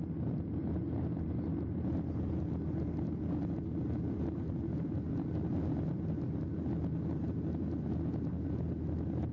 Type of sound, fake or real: real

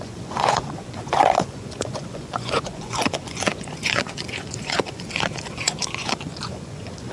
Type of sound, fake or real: fake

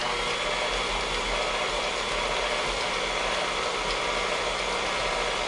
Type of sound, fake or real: real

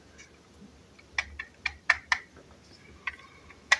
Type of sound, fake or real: real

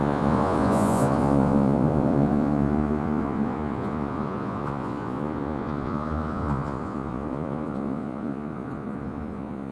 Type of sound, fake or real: fake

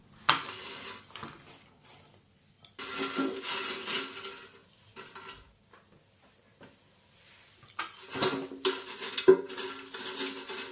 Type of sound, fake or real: real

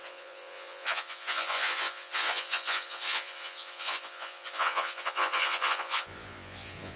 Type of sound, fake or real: fake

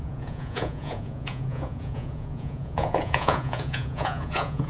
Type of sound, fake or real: fake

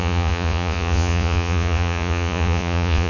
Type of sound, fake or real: fake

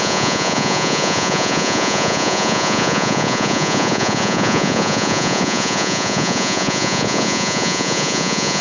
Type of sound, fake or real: fake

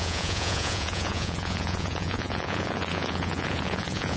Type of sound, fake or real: fake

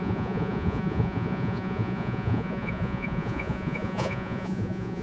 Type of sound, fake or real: fake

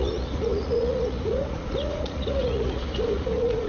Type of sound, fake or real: fake